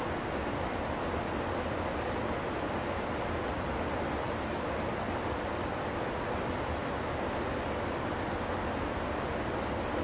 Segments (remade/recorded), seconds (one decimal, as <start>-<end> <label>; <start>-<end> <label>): 0.0-10.0 recorded